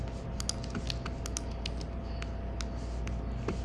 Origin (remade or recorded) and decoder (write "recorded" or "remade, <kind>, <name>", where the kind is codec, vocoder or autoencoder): recorded